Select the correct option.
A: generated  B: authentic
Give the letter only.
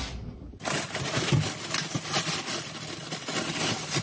B